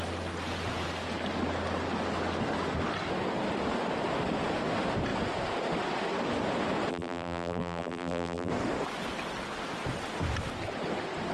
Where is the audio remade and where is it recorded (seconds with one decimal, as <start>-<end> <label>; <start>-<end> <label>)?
0.0-6.9 recorded; 6.9-8.5 remade; 8.5-11.3 recorded